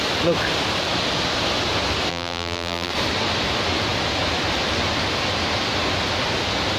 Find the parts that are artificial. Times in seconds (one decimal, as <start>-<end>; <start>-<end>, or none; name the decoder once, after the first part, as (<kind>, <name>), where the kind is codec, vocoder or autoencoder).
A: 2.1-2.9 (vocoder, BigVGAN v2)